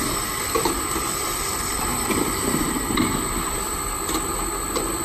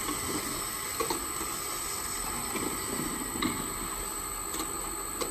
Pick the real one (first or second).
second